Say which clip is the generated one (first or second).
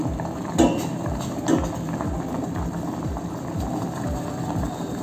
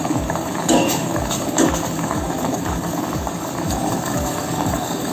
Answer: second